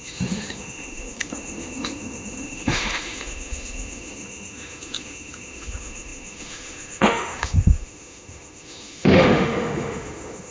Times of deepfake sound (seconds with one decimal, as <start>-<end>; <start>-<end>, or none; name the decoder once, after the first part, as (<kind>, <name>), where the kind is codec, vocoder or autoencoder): 0.0-10.5 (autoencoder, DAC-VAE)